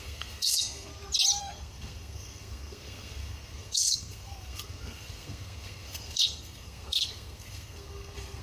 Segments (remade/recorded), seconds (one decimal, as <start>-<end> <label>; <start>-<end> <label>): 0.0-0.9 remade; 0.9-1.4 recorded; 1.4-8.4 remade